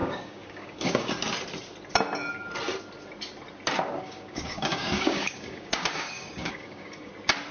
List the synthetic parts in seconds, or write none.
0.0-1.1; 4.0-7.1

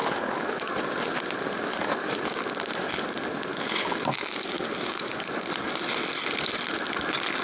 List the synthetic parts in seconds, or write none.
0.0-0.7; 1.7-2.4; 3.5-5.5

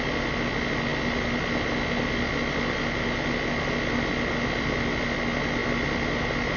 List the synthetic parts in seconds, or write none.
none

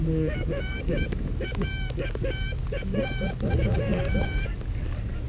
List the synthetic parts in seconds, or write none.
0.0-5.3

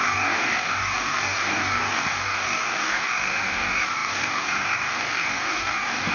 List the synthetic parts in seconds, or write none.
0.0-6.1